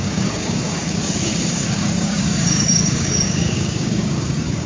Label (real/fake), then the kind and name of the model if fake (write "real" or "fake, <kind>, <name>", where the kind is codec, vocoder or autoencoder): fake, codec, DAC